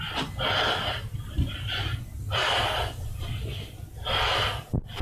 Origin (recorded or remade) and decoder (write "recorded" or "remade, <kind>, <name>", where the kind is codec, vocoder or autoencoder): recorded